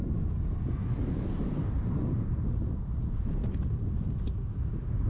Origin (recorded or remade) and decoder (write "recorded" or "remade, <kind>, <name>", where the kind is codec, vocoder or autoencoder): recorded